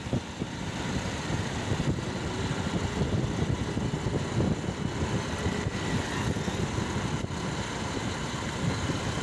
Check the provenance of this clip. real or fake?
real